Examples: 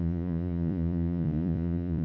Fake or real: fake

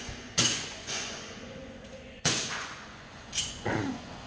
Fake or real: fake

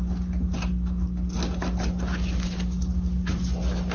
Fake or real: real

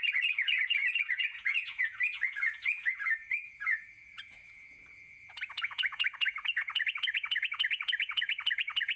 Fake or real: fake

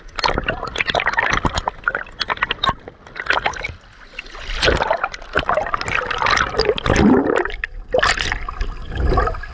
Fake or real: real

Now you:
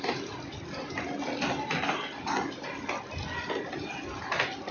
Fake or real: real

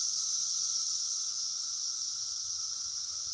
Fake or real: real